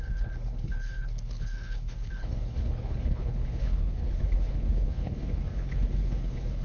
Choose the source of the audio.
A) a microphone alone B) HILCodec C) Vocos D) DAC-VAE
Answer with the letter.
B